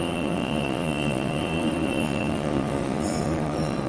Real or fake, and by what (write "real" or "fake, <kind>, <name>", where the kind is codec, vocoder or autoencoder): fake, vocoder, Vocos